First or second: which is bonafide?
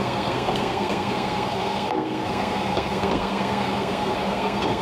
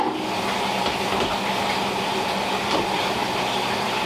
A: second